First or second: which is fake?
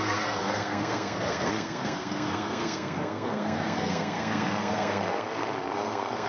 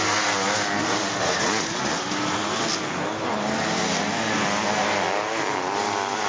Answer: first